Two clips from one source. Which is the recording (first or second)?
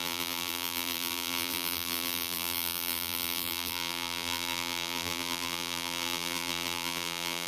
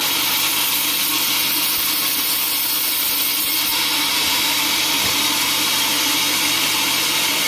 second